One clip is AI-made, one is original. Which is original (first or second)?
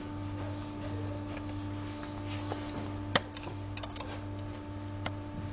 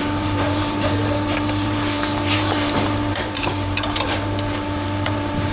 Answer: first